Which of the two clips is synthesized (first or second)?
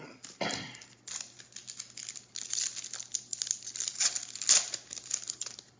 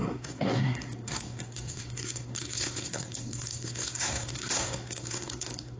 second